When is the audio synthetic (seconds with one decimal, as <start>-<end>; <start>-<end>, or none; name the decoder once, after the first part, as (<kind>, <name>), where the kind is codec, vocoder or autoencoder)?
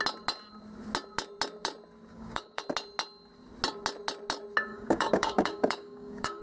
2.1-2.6 (codec, DAC); 4.7-6.4